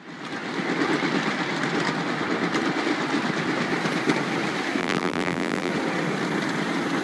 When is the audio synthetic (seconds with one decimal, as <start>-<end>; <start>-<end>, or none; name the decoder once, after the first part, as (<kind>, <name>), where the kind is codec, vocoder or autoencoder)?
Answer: 4.8-5.7 (vocoder, BigVGAN v2)

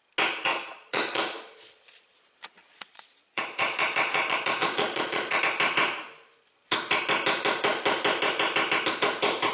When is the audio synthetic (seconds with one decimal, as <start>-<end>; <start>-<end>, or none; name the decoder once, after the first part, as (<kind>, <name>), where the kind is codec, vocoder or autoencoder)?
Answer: 0.5-5.4 (vocoder, Vocos)